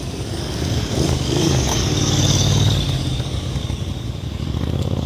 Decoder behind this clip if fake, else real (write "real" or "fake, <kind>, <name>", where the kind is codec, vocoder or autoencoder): fake, codec, DAC